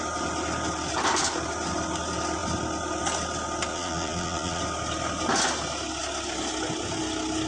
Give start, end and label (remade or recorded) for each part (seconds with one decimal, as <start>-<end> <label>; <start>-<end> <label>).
0.0-3.7 recorded; 3.7-4.6 remade; 4.6-7.5 recorded